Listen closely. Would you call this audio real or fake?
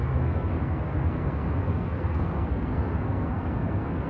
fake